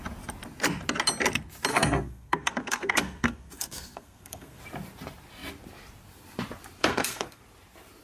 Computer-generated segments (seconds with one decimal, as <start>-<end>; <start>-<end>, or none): 1.7-4.6; 6.8-7.4